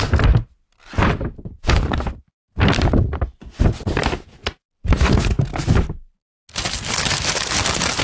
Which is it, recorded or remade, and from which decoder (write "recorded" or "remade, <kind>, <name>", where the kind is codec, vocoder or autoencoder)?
recorded